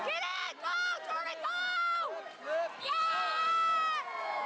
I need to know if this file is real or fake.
real